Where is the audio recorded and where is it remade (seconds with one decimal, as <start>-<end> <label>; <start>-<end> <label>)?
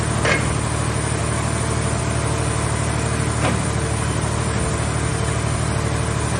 0.0-6.4 recorded